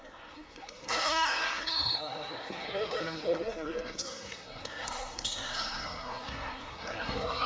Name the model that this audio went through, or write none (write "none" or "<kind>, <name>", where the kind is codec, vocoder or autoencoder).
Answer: codec, SNAC